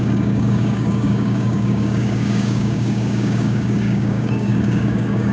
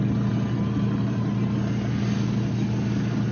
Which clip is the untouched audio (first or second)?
second